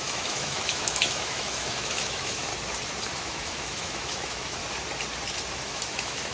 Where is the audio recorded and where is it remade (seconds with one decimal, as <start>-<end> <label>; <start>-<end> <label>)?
0.0-2.5 remade; 2.5-3.2 recorded; 3.2-4.6 remade; 4.6-5.6 recorded; 5.6-6.3 remade